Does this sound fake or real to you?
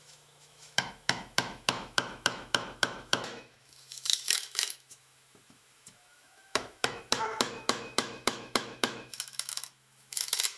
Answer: fake